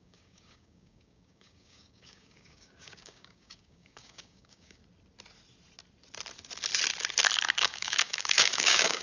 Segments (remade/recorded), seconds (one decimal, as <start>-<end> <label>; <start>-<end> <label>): 0.0-4.8 remade; 4.8-7.6 recorded; 7.6-9.0 remade